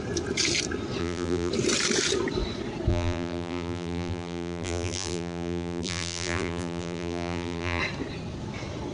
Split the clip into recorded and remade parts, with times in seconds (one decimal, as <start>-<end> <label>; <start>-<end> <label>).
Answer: 0.0-1.0 recorded; 1.0-1.5 remade; 1.5-2.9 recorded; 2.9-7.8 remade; 7.8-8.9 recorded